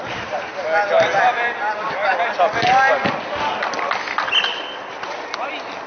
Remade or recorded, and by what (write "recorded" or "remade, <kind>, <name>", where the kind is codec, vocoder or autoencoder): recorded